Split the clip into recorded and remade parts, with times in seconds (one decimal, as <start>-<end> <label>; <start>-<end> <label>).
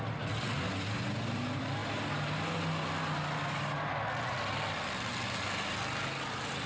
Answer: 0.0-6.7 recorded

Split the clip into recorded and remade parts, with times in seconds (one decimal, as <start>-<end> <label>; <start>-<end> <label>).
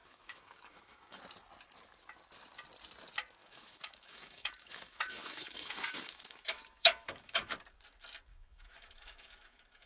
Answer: 0.0-1.2 remade; 1.2-3.4 recorded; 3.4-7.5 remade; 7.5-8.3 recorded; 8.3-9.9 remade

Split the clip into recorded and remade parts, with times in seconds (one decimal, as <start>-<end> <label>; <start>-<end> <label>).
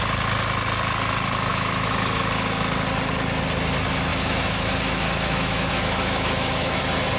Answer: 0.0-1.5 recorded; 1.5-2.2 remade; 2.2-4.1 recorded; 4.1-6.8 remade; 6.8-7.2 recorded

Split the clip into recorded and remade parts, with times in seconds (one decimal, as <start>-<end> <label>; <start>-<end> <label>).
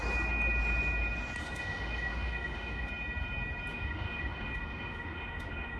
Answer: 0.0-1.4 recorded; 1.4-2.9 remade; 2.9-3.7 recorded; 3.7-5.8 remade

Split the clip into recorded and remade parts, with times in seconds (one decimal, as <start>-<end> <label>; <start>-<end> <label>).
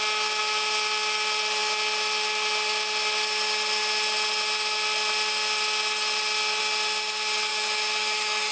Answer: 0.0-7.5 recorded; 7.5-8.5 remade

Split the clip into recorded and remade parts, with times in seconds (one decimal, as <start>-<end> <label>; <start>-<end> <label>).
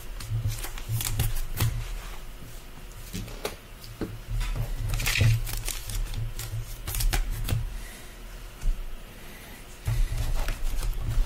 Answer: 0.0-11.3 recorded